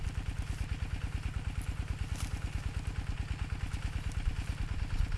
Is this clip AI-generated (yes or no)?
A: no